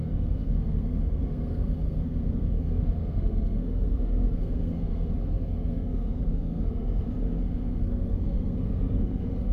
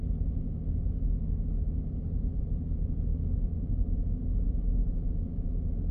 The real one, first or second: second